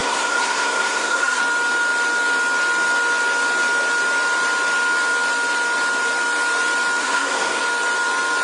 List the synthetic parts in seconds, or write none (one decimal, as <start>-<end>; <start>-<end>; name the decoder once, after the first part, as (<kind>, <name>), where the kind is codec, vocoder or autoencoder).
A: 0.0-1.4 (codec, SNAC); 7.0-7.6